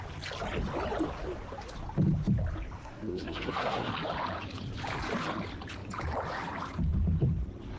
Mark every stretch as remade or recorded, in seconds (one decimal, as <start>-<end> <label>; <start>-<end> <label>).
0.0-2.8 recorded; 2.8-3.9 remade; 3.9-7.8 recorded